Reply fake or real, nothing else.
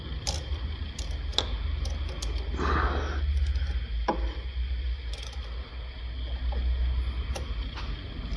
real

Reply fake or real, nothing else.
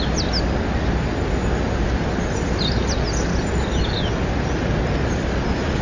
real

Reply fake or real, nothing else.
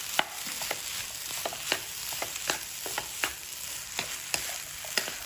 real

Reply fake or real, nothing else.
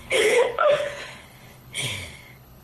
fake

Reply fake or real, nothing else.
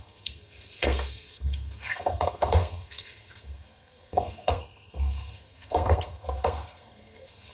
fake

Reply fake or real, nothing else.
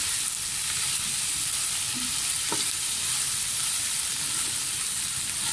real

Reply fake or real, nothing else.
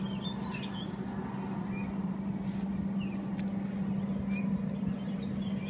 real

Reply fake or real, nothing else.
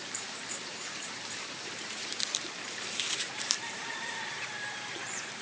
fake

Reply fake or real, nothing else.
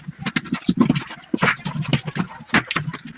real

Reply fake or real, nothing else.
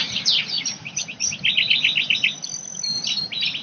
fake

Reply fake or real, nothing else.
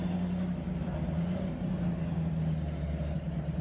real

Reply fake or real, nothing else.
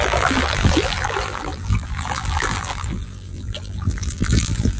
fake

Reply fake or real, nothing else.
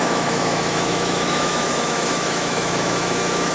fake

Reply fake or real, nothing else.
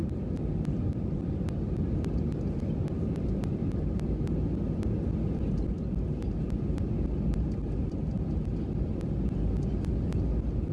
real